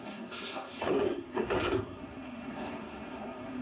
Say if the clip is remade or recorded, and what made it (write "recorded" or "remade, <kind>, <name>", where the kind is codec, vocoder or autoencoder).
remade, codec, SNAC